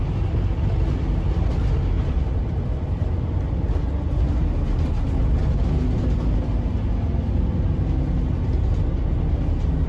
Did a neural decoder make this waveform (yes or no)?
no